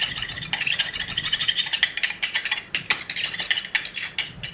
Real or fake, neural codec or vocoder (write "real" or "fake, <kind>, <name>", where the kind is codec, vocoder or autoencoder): real